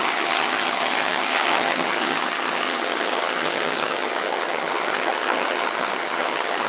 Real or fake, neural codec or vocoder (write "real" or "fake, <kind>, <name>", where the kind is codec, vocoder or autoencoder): fake, vocoder, HiFi-GAN